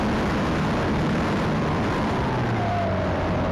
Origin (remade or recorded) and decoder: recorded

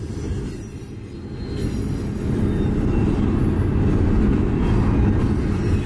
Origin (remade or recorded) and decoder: recorded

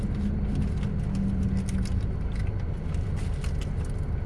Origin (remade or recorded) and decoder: recorded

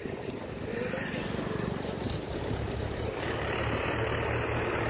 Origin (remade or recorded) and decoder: recorded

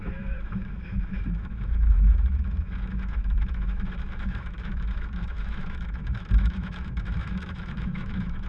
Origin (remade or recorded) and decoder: remade, autoencoder, DAC-VAE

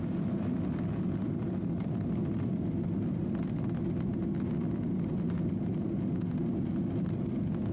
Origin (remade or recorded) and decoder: recorded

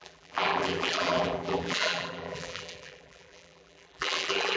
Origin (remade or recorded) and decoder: remade, vocoder, BigVGAN v2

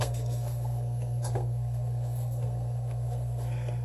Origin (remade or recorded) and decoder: remade, codec, SNAC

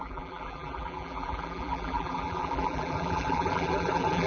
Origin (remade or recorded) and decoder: remade, vocoder, BigVGAN v2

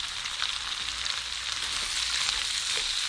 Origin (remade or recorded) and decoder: recorded